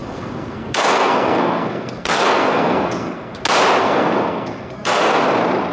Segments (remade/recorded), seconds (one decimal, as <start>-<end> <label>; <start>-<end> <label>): 0.0-3.4 remade; 3.4-3.8 recorded; 3.8-5.2 remade; 5.2-5.7 recorded